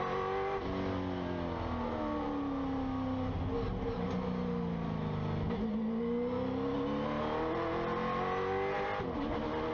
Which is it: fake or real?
real